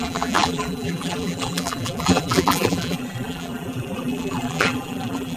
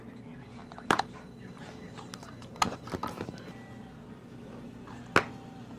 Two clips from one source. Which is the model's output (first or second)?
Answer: first